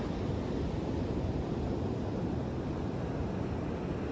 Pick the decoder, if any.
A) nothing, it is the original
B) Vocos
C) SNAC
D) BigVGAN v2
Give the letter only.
A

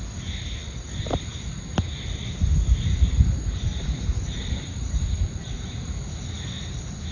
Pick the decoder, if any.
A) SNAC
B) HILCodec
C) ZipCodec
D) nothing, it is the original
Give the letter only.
D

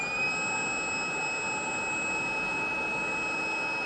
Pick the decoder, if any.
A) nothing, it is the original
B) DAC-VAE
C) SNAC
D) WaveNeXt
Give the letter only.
A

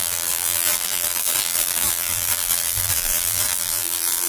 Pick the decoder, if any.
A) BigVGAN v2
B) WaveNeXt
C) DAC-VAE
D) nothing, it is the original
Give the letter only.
A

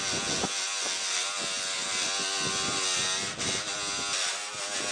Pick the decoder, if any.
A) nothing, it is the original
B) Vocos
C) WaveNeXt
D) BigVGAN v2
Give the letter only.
A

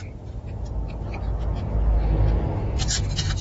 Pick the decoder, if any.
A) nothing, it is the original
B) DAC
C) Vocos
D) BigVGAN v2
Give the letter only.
A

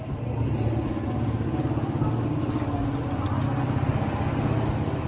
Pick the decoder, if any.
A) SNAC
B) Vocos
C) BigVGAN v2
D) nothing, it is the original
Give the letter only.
D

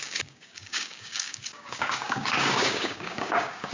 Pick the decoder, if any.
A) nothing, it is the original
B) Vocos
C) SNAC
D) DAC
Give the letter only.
D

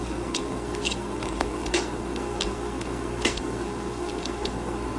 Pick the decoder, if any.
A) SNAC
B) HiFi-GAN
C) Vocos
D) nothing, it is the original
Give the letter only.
A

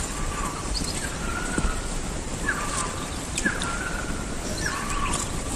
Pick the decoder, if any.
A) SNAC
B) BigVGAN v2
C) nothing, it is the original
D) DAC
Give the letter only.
B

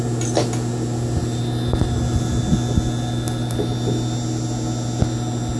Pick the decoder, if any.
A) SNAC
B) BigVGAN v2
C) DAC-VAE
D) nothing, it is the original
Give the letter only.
D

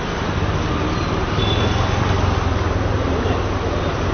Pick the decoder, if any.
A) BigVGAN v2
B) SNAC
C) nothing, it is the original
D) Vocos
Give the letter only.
C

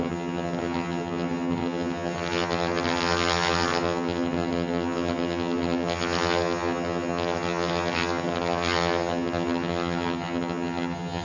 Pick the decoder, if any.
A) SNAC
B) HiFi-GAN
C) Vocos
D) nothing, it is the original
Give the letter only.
B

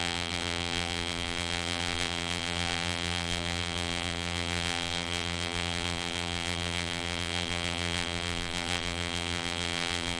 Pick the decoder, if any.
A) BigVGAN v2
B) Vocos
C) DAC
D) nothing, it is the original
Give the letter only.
A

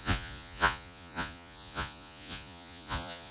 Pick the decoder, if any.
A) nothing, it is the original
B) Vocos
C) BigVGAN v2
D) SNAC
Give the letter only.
B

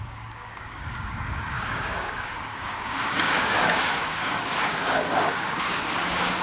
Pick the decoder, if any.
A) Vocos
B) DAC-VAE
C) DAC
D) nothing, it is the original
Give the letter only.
C